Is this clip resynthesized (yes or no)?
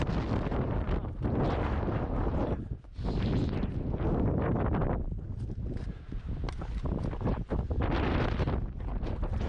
no